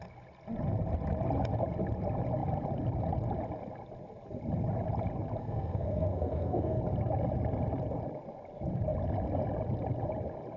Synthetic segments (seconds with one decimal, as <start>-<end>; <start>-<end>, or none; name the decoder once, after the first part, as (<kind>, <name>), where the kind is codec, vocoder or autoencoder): 5.4-6.8 (codec, SNAC)

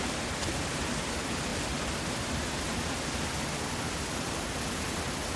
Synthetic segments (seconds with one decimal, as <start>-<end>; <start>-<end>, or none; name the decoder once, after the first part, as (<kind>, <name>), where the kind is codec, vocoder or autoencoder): none